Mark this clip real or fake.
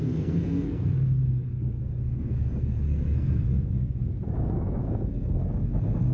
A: fake